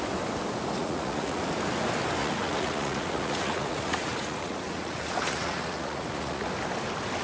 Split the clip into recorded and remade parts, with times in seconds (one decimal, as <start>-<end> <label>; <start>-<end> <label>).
0.0-0.8 recorded; 0.8-1.4 remade; 1.4-2.2 recorded; 2.2-6.5 remade; 6.5-7.2 recorded